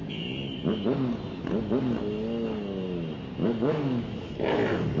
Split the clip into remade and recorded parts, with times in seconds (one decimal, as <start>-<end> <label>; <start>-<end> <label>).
0.0-3.4 recorded; 3.4-4.3 remade; 4.3-5.0 recorded